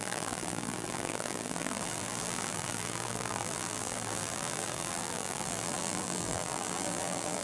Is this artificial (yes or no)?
yes